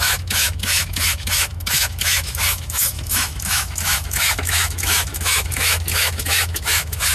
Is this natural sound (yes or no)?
no